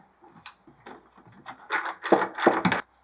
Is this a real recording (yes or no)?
yes